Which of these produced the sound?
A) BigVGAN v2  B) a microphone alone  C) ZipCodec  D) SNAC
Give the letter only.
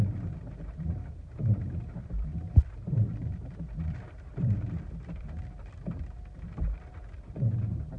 A